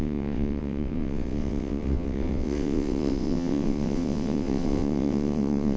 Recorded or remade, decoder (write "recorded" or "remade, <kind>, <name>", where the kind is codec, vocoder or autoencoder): remade, vocoder, WaveNeXt